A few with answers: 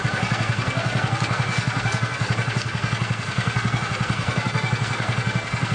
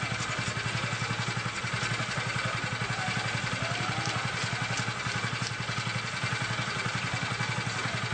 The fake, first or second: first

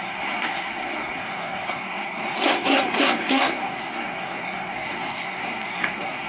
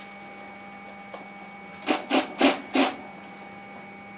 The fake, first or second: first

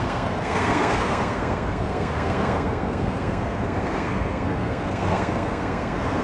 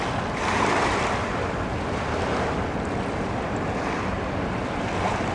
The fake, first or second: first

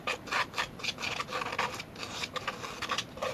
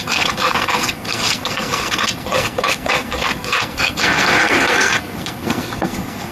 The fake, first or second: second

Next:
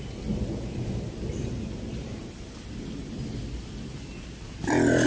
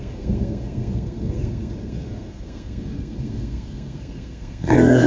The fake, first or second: second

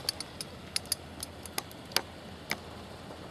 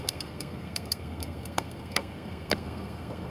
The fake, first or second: second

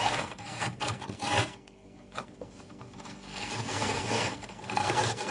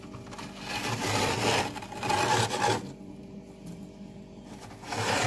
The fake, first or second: first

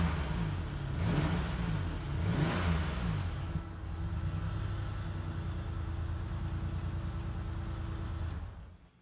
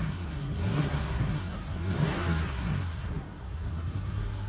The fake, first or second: second